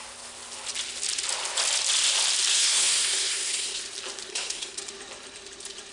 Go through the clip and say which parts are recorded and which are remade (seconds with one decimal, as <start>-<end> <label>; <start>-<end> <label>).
0.0-2.5 recorded; 2.5-3.8 remade; 3.8-4.3 recorded; 4.3-4.8 remade; 4.8-5.9 recorded